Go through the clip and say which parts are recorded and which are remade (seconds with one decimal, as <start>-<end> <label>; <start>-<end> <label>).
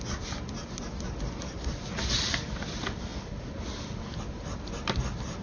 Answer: 0.0-5.4 recorded